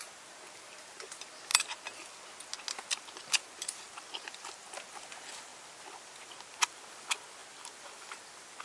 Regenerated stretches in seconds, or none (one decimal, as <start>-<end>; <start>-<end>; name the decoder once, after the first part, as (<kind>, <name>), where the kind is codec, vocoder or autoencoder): none